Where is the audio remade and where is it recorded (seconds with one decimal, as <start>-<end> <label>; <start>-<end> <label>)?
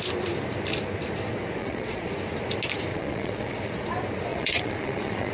0.0-1.6 recorded; 1.6-2.1 remade; 2.1-2.9 recorded; 2.9-3.7 remade; 3.7-4.3 recorded; 4.3-5.3 remade